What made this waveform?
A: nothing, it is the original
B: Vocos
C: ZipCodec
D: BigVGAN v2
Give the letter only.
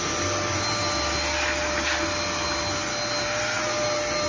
A